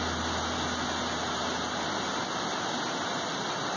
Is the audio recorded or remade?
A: recorded